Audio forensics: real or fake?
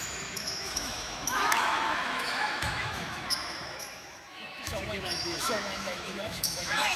fake